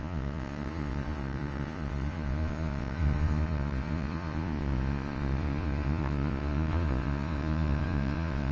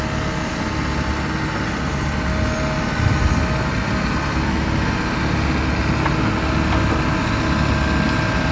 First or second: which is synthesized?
first